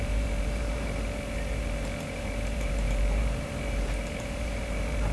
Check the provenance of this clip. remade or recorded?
remade